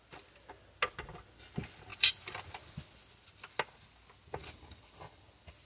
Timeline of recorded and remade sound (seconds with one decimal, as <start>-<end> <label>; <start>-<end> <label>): 0.0-1.9 recorded; 1.9-2.4 remade; 2.4-4.4 recorded; 4.4-4.9 remade; 4.9-5.7 recorded